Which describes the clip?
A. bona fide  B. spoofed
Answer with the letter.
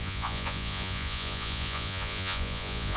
B